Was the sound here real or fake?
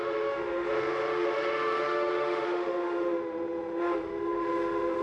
fake